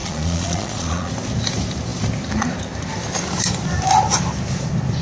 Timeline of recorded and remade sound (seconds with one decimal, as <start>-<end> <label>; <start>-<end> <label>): 0.0-1.1 remade; 1.1-5.0 recorded